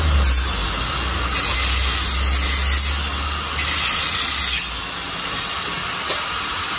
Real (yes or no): yes